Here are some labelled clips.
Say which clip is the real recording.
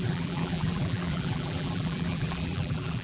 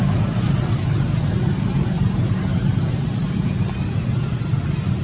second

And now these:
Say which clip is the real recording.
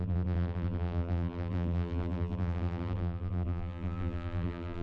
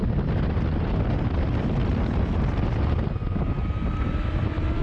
second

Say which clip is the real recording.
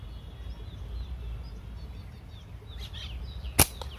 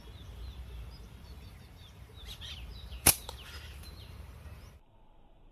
first